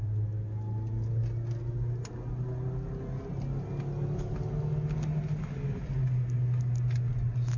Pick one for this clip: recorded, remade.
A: recorded